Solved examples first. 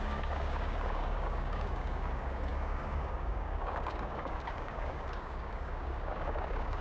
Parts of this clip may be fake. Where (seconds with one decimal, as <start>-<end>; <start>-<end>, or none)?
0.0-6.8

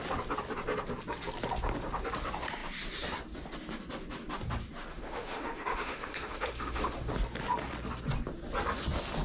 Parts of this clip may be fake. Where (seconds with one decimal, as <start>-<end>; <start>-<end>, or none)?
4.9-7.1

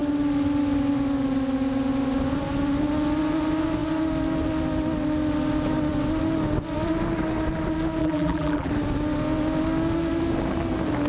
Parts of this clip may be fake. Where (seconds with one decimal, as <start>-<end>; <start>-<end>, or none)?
8.0-8.7

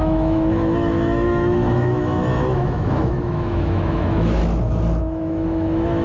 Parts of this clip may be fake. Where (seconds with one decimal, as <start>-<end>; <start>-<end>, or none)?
0.0-4.4; 5.0-6.0

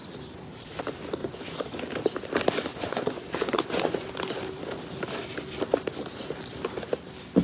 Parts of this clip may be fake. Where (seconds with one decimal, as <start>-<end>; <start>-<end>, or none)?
1.2-1.8; 2.7-4.1

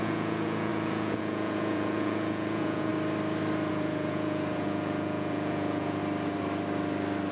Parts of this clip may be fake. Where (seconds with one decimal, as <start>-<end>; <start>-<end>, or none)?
0.0-2.9; 3.7-6.0

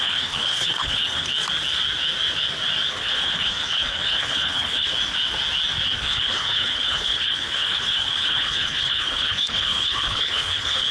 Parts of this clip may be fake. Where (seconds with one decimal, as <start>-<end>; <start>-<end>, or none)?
0.0-1.3; 2.9-4.9; 6.0-10.9